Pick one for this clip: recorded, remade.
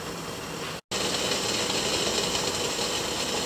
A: recorded